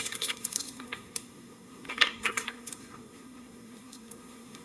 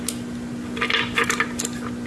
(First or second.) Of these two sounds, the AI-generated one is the first